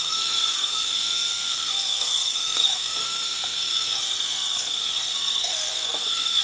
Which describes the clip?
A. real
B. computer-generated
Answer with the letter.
B